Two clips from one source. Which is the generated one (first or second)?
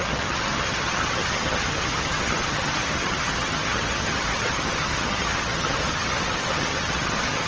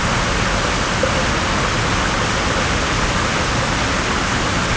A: first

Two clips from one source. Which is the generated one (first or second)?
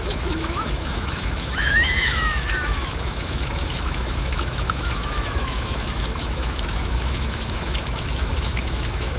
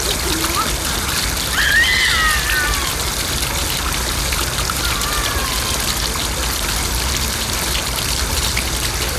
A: first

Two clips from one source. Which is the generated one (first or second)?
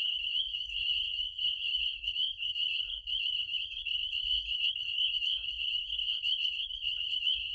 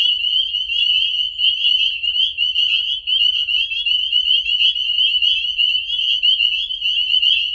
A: first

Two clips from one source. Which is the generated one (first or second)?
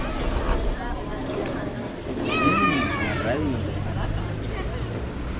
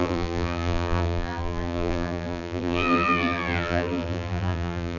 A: second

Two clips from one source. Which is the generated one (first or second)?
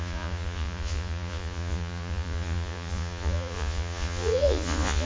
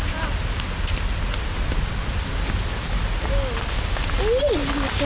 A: first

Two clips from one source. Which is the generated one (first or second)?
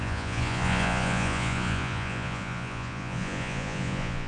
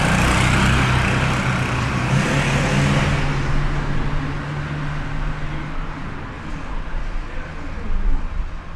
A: first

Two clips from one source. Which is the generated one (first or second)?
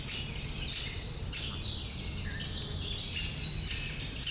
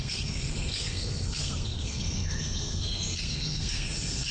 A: second